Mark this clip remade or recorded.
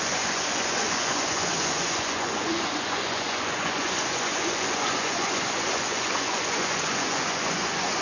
remade